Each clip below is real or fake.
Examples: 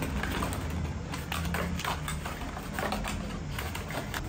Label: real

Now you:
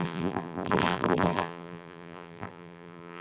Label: fake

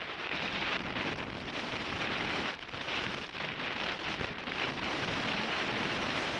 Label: fake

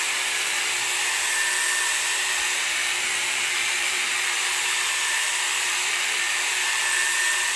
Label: fake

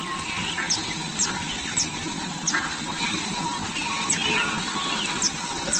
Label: real